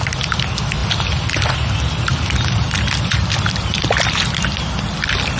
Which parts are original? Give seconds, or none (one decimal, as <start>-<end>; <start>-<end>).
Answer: 0.0-5.4